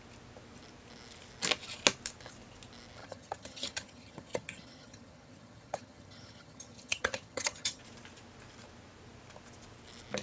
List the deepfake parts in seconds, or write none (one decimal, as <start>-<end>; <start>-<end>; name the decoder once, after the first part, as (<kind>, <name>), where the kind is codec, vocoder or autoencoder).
3.0-7.8 (vocoder, HiFi-GAN)